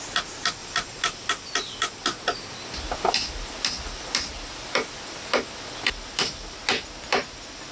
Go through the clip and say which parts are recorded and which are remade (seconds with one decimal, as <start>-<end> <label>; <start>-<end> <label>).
0.0-0.6 recorded; 0.6-1.3 remade; 1.3-7.7 recorded